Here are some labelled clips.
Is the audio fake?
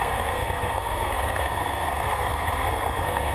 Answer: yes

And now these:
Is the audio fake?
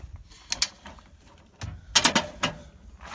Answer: no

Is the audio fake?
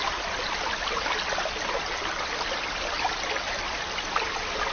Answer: no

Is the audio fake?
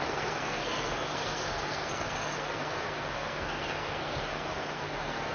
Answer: yes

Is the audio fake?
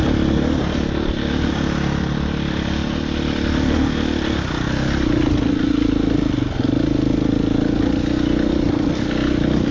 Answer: no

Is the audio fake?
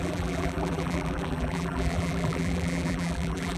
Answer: yes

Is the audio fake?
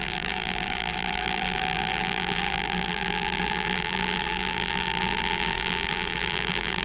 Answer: yes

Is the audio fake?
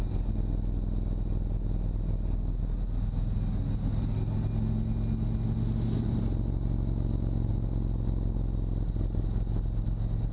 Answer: no